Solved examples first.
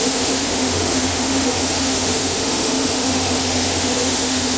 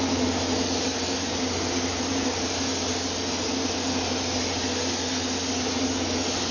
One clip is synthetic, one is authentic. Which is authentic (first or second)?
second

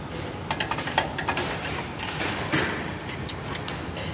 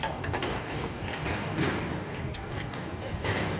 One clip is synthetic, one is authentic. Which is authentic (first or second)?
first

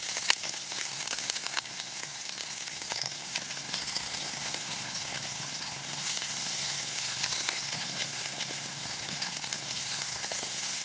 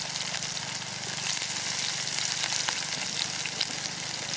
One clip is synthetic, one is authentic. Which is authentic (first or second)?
second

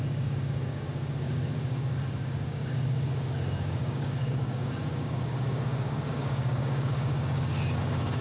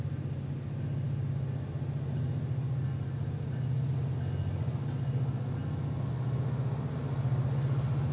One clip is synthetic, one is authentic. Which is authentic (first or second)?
second